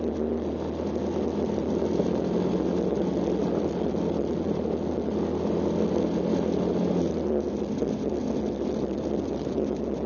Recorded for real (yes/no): yes